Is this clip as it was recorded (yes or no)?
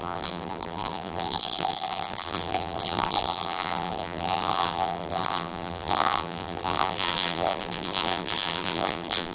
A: no